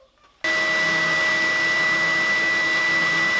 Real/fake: real